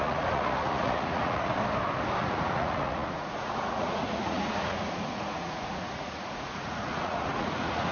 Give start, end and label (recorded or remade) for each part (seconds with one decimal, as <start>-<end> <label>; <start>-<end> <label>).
0.0-1.6 remade; 1.6-2.2 recorded; 2.2-7.9 remade